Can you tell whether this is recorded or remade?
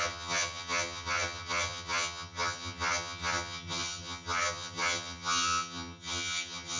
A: remade